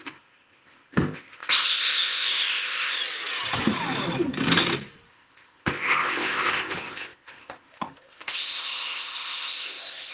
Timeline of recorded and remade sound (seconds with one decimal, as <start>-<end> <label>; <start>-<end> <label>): 0.0-3.0 remade; 3.0-5.1 recorded; 5.1-10.1 remade